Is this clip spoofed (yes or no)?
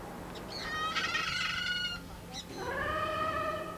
no